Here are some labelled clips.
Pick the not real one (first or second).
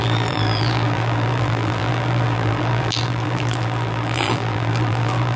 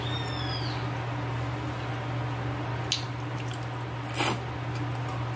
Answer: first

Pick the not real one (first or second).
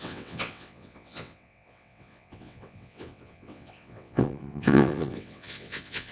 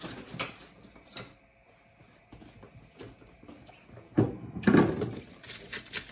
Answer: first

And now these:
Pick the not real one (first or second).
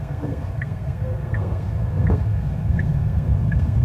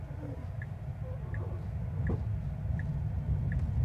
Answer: first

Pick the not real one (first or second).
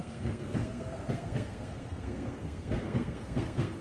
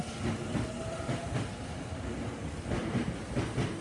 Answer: first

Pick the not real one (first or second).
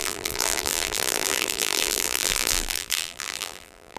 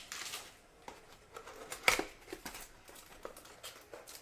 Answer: first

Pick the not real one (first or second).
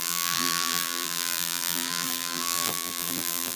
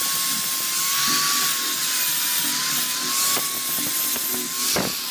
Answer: first